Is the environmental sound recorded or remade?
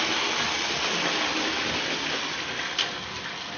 recorded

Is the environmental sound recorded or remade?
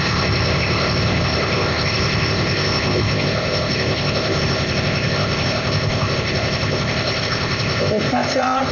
remade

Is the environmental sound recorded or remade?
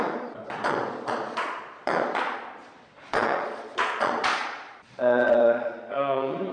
remade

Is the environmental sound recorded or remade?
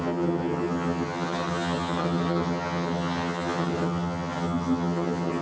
remade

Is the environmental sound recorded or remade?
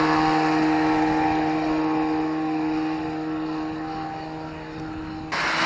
recorded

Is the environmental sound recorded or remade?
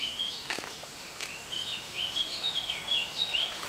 remade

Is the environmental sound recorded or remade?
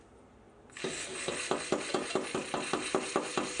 recorded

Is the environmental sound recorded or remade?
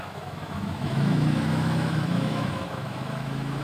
remade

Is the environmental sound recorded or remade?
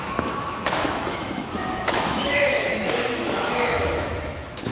remade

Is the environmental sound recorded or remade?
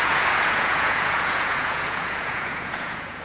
remade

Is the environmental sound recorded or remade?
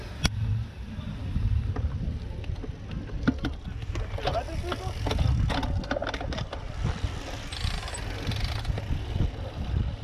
recorded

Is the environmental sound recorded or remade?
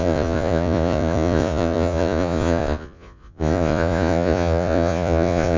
remade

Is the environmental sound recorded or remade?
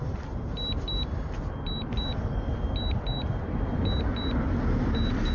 recorded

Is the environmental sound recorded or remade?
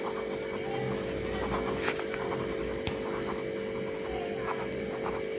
recorded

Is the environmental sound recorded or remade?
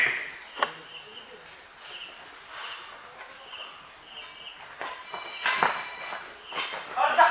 recorded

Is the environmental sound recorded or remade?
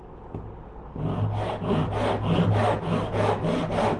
recorded